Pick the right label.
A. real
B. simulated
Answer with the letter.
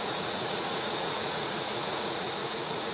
B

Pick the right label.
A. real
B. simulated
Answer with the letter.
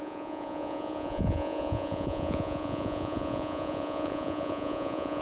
B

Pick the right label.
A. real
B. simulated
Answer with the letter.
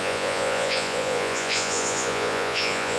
B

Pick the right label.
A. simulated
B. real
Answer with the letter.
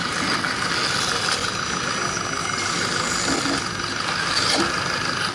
B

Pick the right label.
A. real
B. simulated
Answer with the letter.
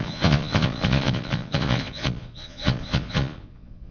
B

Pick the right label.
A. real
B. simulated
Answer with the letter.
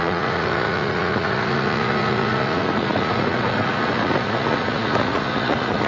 B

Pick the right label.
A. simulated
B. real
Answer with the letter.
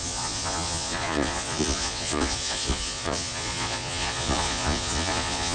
A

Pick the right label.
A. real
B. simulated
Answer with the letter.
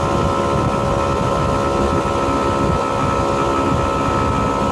A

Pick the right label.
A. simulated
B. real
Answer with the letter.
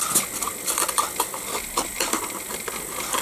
B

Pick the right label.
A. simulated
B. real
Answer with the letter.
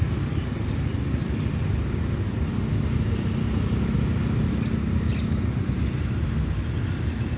B